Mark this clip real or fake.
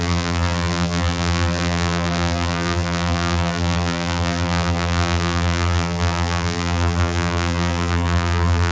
fake